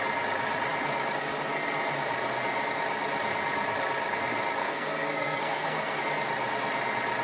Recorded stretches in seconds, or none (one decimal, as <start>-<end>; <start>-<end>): 0.0-4.6; 6.0-7.2